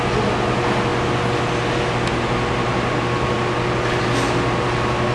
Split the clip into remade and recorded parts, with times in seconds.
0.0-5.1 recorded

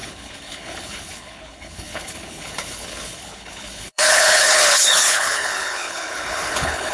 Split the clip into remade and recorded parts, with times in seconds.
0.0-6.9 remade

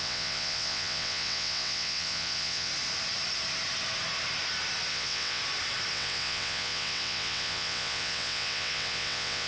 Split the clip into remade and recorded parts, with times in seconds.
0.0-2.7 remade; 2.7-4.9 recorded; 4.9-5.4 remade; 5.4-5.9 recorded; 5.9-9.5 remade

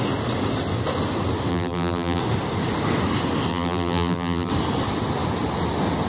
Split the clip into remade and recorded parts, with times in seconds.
0.0-1.5 recorded; 1.5-2.2 remade; 2.2-3.5 recorded; 3.5-4.5 remade; 4.5-6.1 recorded

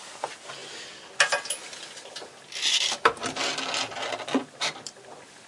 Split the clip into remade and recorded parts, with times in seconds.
0.0-5.5 recorded